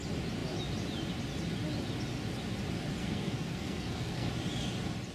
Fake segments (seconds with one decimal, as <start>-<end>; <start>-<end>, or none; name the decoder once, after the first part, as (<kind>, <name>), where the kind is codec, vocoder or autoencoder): 3.0-4.3 (codec, SNAC)